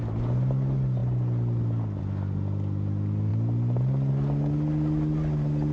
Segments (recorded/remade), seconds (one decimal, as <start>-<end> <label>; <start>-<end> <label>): 0.0-5.7 recorded